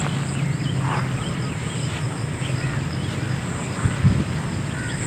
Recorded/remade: recorded